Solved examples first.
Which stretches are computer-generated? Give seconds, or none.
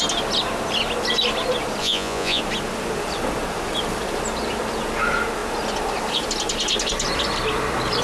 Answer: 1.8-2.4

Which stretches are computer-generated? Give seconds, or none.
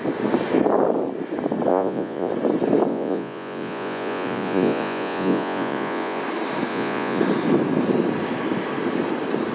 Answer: 1.7-2.3; 2.9-6.2; 6.7-7.2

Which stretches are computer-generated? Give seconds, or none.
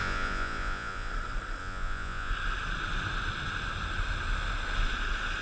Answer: 0.0-1.1; 1.6-2.3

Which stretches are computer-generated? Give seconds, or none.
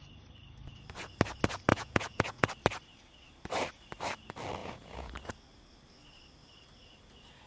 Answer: 1.7-2.5; 4.6-5.1